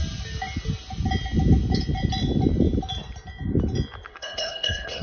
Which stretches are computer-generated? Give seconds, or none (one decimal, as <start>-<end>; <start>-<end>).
4.1-5.0